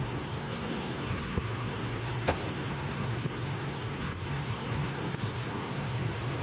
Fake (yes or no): yes